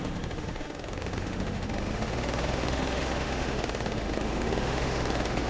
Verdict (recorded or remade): remade